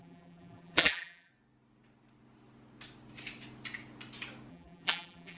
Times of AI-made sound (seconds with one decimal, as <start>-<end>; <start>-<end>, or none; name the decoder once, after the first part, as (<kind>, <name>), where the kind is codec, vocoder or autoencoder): 0.0-1.3 (vocoder, BigVGAN v2); 4.5-5.4